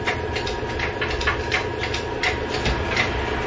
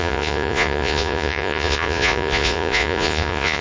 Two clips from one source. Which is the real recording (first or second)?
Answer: first